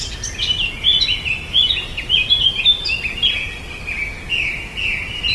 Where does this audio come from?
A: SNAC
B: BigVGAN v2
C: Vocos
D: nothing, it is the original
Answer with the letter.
D